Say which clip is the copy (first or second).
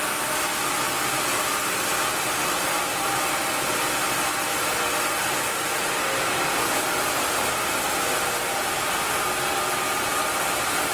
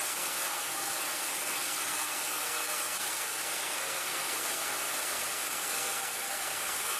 second